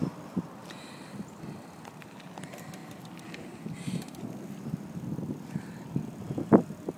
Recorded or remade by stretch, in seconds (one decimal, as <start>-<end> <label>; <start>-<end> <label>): 0.0-2.8 recorded; 2.8-6.3 remade; 6.3-7.0 recorded